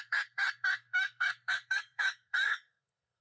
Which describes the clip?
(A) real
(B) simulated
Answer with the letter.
B